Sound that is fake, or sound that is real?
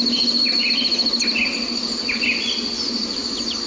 real